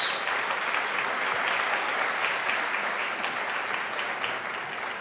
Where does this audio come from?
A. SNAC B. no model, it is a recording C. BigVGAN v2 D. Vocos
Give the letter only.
B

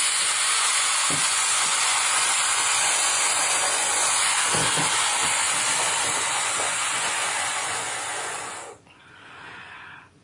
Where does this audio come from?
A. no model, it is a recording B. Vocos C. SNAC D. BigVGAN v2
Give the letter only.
B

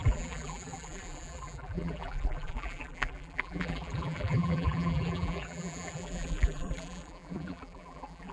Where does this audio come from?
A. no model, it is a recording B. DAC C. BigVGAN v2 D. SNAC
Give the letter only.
C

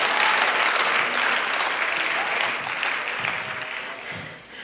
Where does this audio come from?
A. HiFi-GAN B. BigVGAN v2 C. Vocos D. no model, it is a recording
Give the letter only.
D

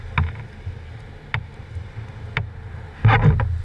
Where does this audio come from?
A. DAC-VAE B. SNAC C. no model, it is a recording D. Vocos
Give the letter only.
C